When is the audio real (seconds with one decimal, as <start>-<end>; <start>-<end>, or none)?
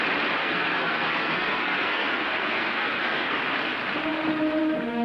0.0-0.4; 3.4-5.0